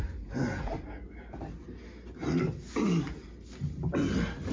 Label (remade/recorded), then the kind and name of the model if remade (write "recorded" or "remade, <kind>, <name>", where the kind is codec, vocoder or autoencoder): recorded